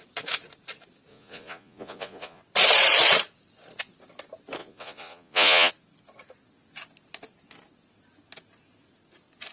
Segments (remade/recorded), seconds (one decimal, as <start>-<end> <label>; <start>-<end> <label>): 0.0-1.1 recorded; 1.1-2.4 remade; 2.4-4.6 recorded; 4.6-5.7 remade; 5.7-9.5 recorded